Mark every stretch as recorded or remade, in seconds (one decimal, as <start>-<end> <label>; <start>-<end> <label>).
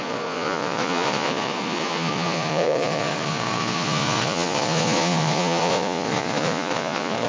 0.0-7.3 remade